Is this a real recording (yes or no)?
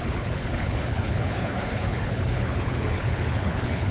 no